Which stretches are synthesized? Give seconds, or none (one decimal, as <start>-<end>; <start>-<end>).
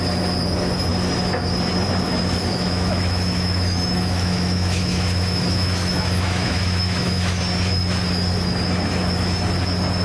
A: 2.5-7.4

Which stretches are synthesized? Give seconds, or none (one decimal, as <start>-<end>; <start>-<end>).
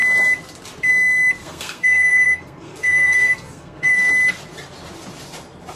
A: 1.4-4.1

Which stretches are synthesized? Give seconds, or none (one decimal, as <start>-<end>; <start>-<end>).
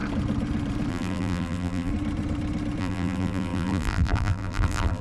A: 0.9-1.9; 2.8-5.0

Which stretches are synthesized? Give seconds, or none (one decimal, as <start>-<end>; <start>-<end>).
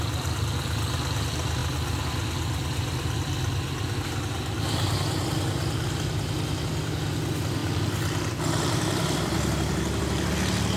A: 7.6-10.3